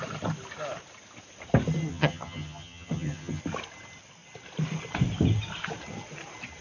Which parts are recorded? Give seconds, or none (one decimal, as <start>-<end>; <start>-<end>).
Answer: 0.0-1.9; 3.4-6.6